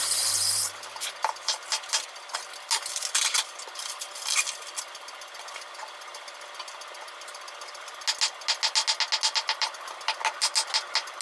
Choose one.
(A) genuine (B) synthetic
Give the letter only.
A